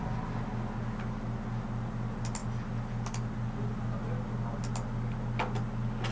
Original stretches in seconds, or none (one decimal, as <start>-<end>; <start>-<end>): 0.0-6.1